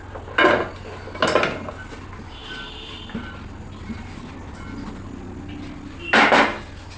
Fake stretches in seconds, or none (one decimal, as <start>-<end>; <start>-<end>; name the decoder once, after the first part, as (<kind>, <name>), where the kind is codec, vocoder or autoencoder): none